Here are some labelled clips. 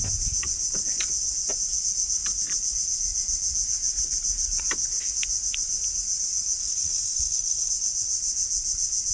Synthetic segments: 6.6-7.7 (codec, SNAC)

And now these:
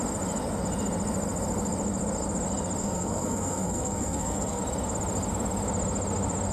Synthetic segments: 2.8-4.6 (codec, SNAC)

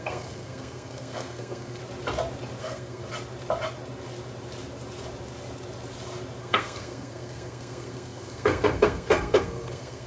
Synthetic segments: 0.0-1.8 (codec, SNAC); 2.6-3.0; 6.4-10.1

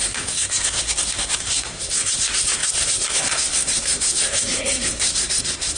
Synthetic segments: 0.0-5.8 (codec, SNAC)

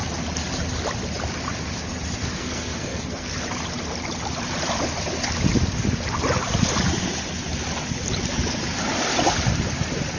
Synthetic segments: 2.3-3.3 (codec, SNAC)

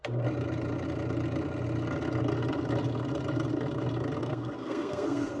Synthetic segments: 4.2-5.4 (codec, SNAC)